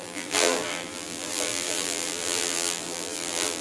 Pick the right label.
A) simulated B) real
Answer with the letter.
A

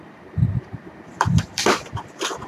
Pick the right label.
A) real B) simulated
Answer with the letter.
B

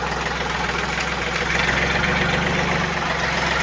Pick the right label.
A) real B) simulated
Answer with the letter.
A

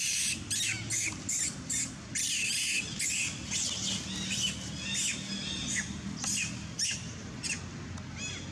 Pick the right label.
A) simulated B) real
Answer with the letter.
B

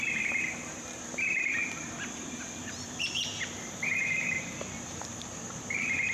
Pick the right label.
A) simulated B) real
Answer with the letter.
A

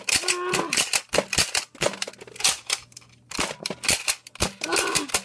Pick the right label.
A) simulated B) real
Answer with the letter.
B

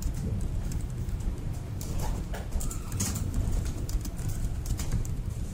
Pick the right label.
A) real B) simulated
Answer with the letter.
B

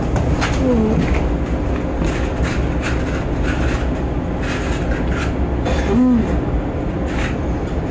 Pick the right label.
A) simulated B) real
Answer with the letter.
B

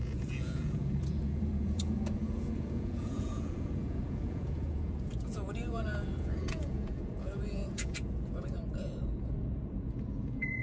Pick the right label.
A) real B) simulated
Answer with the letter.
B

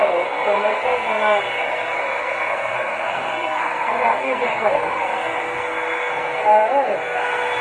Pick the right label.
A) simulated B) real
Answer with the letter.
A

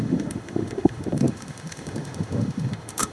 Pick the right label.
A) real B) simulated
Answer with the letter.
B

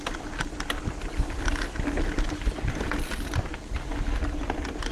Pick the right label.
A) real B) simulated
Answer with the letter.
A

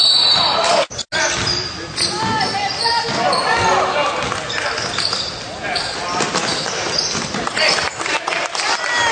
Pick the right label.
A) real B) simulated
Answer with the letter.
A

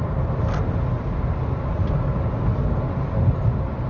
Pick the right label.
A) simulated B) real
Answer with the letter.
B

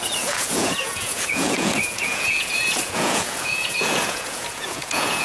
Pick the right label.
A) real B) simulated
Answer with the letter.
B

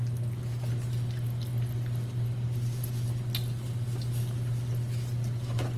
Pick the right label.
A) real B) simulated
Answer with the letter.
A